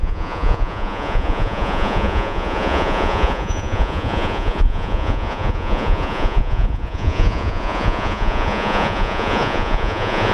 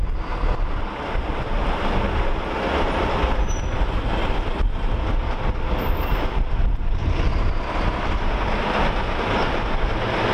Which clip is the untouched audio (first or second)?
second